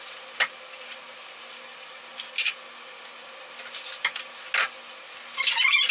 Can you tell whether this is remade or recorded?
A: recorded